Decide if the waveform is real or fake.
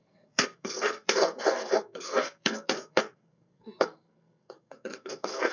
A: fake